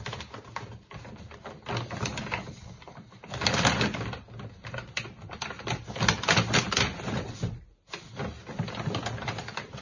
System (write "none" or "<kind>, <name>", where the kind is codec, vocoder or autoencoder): none